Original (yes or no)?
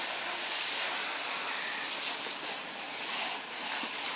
yes